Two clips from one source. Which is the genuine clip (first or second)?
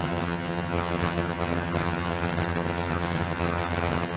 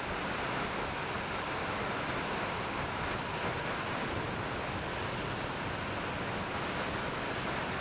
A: second